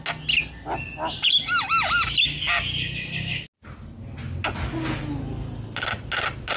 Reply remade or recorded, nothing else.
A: recorded